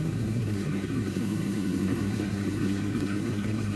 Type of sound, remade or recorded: remade